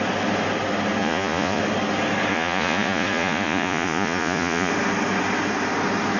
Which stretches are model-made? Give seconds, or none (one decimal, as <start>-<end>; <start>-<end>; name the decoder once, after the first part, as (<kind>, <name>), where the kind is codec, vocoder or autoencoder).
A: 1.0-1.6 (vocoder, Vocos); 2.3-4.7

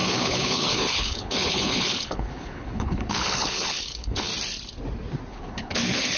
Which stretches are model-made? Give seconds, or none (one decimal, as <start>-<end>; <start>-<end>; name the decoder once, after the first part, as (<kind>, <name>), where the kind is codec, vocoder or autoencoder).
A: 0.0-4.3 (codec, HILCodec); 5.3-6.2

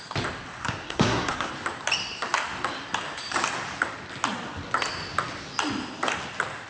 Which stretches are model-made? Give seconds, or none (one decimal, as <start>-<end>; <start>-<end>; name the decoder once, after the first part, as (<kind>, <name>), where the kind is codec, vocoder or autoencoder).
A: 0.6-1.5 (codec, SNAC)

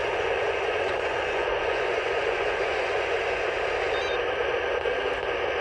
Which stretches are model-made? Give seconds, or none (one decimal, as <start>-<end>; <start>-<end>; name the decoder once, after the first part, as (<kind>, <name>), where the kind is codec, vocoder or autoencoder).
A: 0.0-3.4 (vocoder, Vocos)

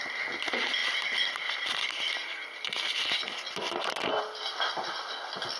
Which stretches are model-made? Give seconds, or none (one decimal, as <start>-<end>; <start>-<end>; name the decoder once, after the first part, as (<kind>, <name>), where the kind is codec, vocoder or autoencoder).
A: none